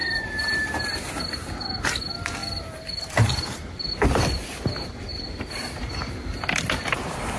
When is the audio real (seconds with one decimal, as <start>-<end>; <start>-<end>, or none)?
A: 1.1-7.4